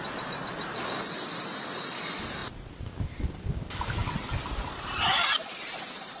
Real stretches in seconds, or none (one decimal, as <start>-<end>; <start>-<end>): 0.0-6.2